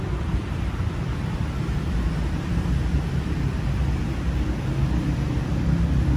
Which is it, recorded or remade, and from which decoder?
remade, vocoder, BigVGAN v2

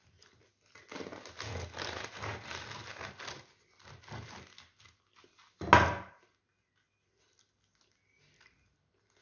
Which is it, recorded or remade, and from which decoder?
recorded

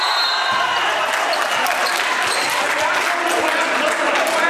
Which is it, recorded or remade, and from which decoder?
recorded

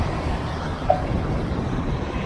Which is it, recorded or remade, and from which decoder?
remade, vocoder, BigVGAN v2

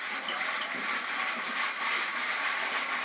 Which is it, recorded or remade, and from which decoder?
recorded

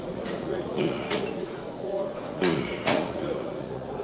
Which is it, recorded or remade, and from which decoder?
remade, vocoder, Vocos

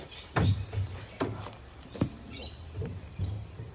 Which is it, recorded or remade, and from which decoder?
remade, vocoder, BigVGAN v2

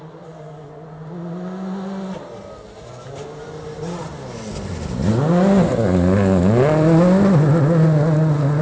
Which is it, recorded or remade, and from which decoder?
recorded